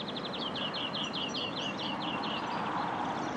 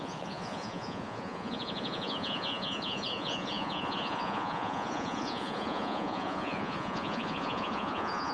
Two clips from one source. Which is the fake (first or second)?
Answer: second